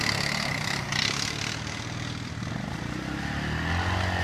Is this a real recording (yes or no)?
yes